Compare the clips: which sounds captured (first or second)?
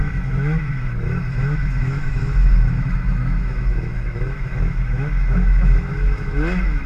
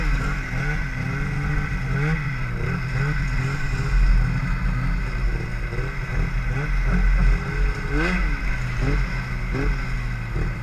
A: second